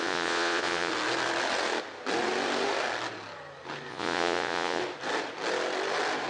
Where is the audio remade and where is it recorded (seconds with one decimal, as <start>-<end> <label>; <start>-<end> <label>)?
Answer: 0.0-0.9 remade; 0.9-3.9 recorded; 3.9-4.8 remade; 4.8-6.3 recorded